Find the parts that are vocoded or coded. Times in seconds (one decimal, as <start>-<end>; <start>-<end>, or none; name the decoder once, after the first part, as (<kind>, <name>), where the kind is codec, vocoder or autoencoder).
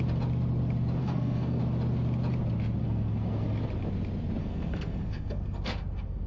1.0-1.6 (codec, SNAC); 2.8-3.6; 4.4-6.3